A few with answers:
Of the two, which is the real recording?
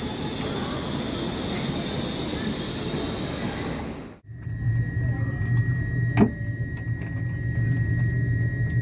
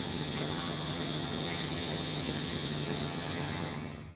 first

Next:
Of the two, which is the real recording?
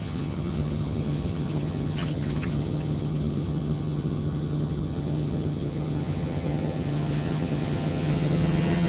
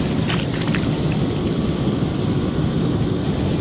second